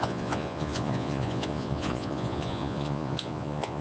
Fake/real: fake